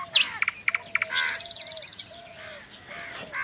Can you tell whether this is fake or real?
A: real